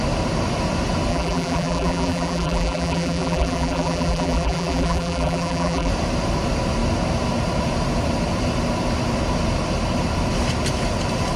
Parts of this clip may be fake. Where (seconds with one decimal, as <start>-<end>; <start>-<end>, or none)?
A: 1.1-5.9